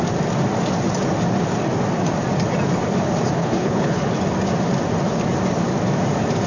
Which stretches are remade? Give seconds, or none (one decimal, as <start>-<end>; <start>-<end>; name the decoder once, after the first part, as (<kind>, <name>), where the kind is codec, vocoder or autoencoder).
3.4-4.1 (codec, HILCodec)